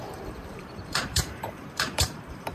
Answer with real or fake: fake